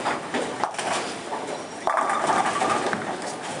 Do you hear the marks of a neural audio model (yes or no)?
no